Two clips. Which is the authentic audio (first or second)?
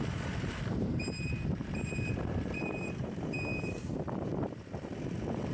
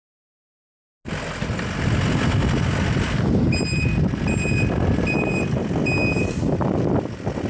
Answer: second